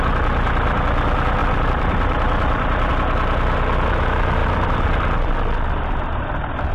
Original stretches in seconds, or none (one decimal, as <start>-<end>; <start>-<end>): 0.0-1.4; 2.9-4.4; 5.3-6.7